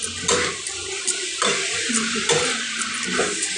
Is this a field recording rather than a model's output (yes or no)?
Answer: yes